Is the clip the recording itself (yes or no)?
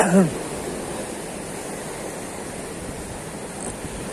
yes